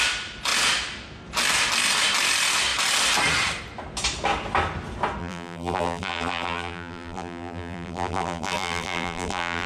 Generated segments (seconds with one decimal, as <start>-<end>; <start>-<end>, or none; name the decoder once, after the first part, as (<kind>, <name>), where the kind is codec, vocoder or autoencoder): 5.2-9.7 (vocoder, BigVGAN v2)